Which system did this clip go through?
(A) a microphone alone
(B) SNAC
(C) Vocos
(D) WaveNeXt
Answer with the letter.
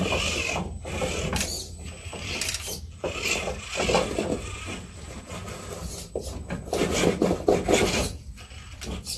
A